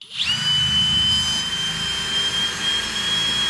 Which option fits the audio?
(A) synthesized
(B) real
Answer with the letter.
B